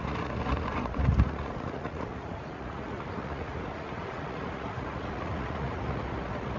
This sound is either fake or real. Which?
fake